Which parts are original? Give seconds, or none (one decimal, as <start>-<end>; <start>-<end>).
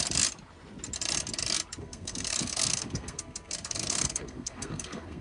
0.0-1.8